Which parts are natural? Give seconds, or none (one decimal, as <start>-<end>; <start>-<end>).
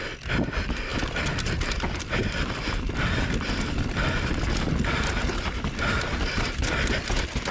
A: 0.0-0.9; 4.3-7.5